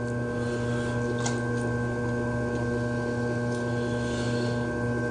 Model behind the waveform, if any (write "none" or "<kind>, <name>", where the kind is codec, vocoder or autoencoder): none